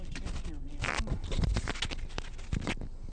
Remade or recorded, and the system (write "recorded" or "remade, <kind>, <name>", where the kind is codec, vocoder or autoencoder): recorded